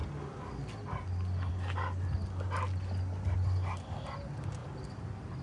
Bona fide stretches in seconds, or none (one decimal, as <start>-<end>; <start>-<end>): 0.0-5.4